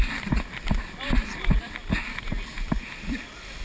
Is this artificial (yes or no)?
no